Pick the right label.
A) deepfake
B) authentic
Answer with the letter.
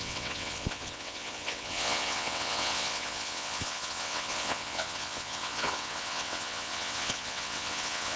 A